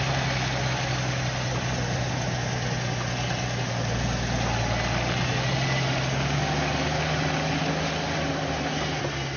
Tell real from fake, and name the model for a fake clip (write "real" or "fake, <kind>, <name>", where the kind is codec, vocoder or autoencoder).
real